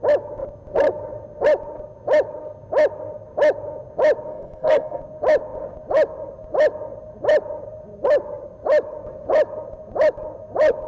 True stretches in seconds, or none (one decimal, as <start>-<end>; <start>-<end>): 0.0-4.3; 5.0-10.9